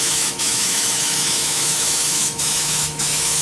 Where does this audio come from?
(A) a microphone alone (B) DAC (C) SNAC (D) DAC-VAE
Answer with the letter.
D